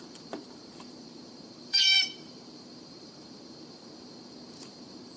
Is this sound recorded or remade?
remade